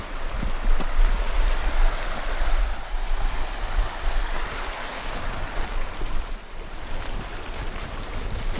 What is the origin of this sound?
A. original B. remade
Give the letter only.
A